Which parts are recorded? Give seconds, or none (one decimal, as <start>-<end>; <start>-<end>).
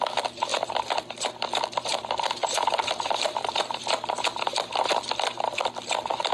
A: 0.0-0.5; 1.3-1.9; 5.0-6.3